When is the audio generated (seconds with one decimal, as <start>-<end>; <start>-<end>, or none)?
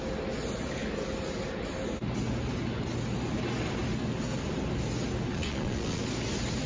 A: 5.3-6.0